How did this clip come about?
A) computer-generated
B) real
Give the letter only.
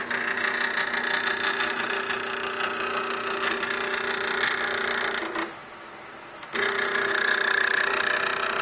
B